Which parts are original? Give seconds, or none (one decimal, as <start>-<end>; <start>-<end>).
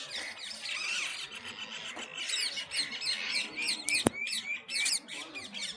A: 0.0-5.8